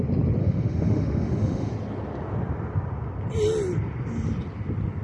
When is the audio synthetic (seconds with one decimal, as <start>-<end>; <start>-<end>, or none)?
0.4-1.7